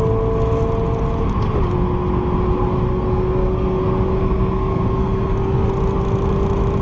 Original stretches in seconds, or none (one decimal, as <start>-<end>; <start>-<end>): 0.0-2.9; 3.8-4.2; 5.7-6.8